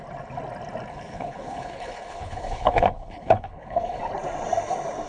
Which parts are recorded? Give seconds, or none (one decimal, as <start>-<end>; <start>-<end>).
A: 0.0-0.9; 4.0-5.1

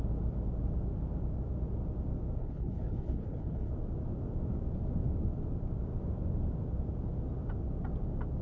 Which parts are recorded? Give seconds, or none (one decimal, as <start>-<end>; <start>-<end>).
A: 0.0-2.4; 3.7-8.4

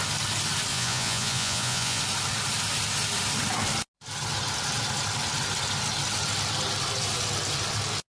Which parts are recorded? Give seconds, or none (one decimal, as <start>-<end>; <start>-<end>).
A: 0.0-0.7; 2.0-8.1

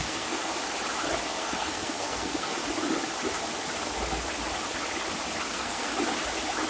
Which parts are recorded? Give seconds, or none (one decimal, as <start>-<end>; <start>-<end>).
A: 0.5-1.2; 2.6-5.5; 5.9-6.7

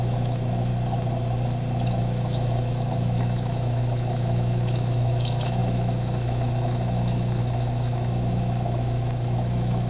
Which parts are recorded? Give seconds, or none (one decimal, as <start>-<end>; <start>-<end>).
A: 0.7-2.0

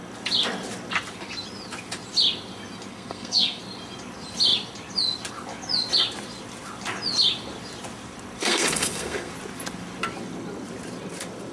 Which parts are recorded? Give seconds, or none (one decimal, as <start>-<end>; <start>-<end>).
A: 0.0-2.9; 3.6-8.4; 9.3-11.5

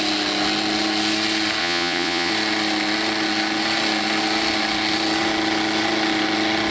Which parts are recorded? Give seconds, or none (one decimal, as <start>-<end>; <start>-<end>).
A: 0.0-1.6; 2.3-6.7

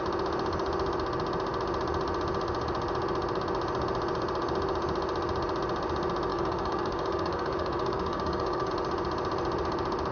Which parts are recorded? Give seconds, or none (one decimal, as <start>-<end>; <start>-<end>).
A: 0.0-6.3; 8.7-10.1